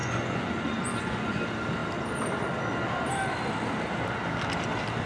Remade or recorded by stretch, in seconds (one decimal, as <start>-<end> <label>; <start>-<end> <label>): 0.0-1.4 remade; 1.4-5.1 recorded